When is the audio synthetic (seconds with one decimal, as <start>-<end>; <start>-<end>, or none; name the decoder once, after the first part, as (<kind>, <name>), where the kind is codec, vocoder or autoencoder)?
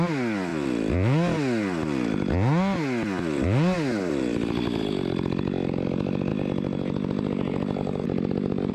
0.0-0.5 (vocoder, BigVGAN v2); 4.1-6.3